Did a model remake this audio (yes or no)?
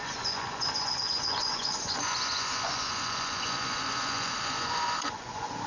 yes